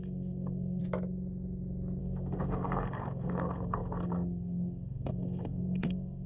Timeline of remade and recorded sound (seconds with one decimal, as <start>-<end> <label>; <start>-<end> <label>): 0.0-0.8 remade; 0.8-2.0 recorded; 2.0-6.3 remade